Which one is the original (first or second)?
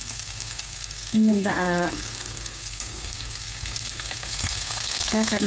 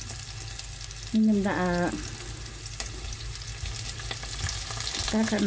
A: second